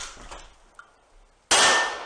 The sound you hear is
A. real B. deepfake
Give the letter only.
A